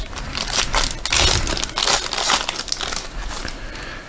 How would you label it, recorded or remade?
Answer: recorded